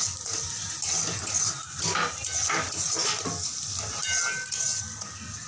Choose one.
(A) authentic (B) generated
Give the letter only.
A